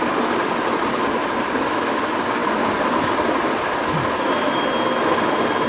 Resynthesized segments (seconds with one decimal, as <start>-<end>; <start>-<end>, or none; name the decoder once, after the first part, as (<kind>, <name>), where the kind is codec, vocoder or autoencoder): none